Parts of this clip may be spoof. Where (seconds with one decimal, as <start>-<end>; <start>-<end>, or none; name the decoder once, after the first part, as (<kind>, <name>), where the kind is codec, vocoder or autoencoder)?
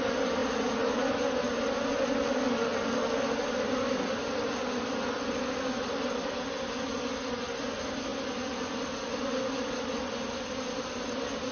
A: none